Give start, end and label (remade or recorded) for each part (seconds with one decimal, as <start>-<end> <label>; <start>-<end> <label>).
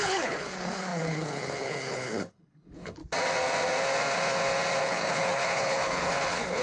0.0-3.0 remade; 3.0-4.8 recorded; 4.8-6.6 remade